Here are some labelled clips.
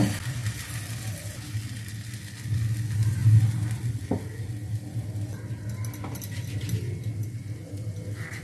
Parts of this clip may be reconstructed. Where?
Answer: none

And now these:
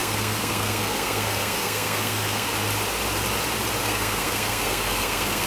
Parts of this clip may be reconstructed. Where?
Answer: 0.0-2.5 (codec, SNAC); 3.8-5.5

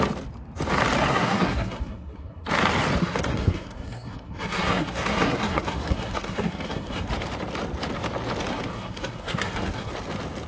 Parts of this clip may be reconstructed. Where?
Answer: 1.1-2.5 (codec, SNAC); 3.0-7.1; 8.5-9.9

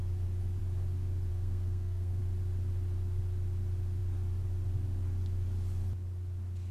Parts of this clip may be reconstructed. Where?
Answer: 1.3-2.2 (codec, SNAC)

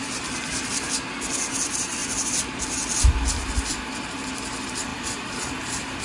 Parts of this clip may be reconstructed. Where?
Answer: none

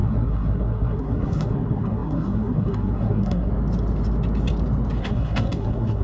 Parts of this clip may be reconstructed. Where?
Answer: 0.0-3.5 (codec, SNAC); 5.0-6.0

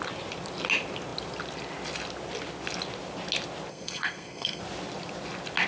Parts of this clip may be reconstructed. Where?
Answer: 3.7-4.6 (codec, SNAC)

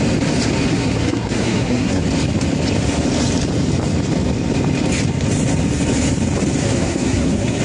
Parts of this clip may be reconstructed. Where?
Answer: 0.7-2.0 (codec, SNAC); 6.6-7.6